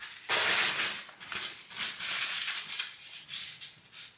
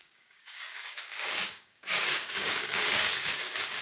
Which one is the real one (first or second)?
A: first